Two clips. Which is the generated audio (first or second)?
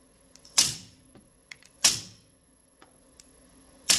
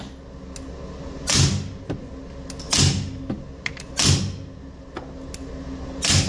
first